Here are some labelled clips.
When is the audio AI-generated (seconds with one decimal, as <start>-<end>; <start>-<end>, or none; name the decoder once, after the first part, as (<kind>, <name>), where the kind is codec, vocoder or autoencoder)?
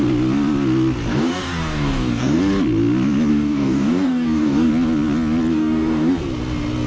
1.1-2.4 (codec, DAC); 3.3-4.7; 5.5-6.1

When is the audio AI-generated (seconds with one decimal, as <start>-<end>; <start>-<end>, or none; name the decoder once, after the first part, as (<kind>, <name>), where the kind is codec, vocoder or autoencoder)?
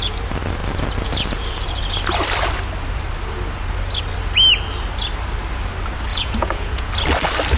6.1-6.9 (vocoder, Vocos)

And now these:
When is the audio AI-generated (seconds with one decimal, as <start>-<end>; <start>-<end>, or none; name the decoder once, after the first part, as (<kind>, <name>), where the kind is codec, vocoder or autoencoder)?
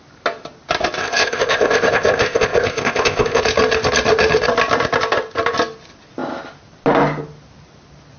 1.0-3.4 (codec, ZipCodec)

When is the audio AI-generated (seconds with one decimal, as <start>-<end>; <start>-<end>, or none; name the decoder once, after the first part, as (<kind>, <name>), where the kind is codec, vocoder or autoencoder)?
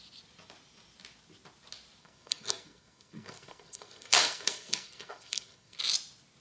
2.0-5.8 (codec, SNAC)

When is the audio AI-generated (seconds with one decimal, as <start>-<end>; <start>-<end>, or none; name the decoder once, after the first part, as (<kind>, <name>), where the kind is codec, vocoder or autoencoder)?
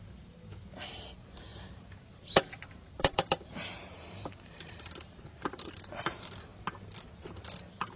0.0-6.5 (vocoder, BigVGAN v2); 7.1-8.0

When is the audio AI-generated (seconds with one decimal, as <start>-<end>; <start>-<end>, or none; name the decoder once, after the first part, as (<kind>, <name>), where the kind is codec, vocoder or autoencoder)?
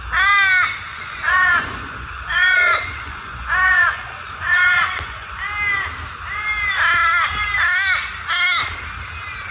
0.9-5.4 (vocoder, Vocos)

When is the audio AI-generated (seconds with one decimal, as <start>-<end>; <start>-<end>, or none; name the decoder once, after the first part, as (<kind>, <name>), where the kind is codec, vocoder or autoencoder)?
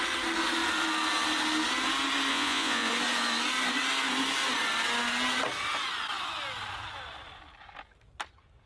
2.3-2.9 (vocoder, Vocos)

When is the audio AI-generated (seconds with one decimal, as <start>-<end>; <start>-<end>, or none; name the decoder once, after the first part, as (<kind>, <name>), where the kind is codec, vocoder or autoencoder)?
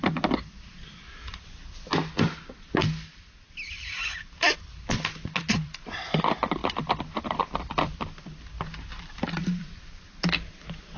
5.4-6.1 (vocoder, BigVGAN v2); 6.6-7.9; 9.4-10.2